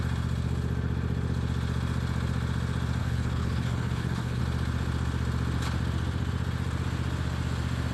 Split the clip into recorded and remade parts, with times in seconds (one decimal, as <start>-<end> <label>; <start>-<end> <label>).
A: 0.0-3.0 recorded; 3.0-4.4 remade; 4.4-7.9 recorded